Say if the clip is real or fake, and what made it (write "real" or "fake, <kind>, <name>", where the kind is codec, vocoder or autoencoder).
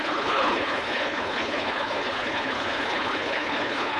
fake, codec, HILCodec